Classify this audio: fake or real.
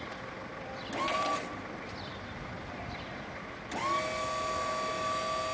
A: real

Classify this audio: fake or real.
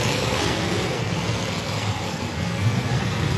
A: fake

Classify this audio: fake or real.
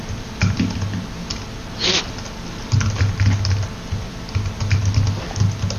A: real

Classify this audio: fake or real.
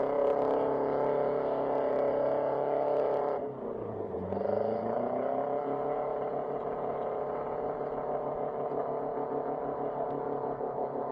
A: fake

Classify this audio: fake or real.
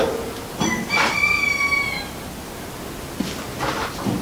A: real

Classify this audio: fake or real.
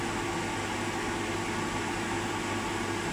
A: real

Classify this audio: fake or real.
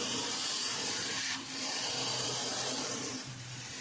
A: fake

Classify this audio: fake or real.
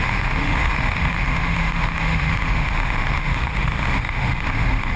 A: fake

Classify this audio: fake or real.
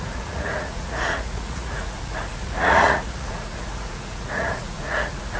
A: fake